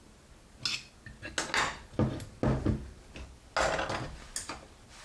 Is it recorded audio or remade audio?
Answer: recorded